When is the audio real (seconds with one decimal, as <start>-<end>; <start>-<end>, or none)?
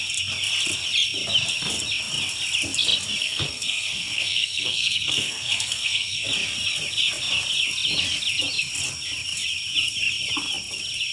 0.0-3.2; 6.3-11.1